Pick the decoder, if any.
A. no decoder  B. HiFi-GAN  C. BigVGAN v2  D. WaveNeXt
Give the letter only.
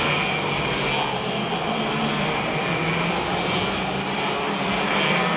A